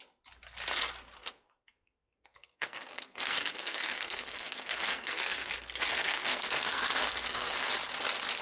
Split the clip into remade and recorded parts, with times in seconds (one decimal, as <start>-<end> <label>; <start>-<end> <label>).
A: 0.0-1.2 recorded; 1.2-5.5 remade; 5.5-5.9 recorded; 5.9-7.7 remade; 7.7-8.4 recorded